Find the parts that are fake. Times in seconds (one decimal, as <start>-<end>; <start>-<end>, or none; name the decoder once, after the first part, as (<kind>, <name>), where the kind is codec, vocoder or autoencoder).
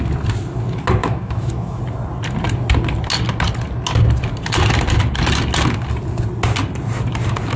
1.0-1.8 (autoencoder, DAC-VAE)